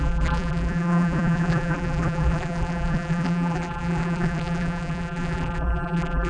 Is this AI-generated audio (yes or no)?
yes